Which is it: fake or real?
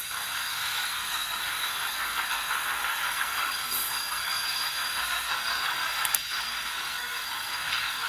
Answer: fake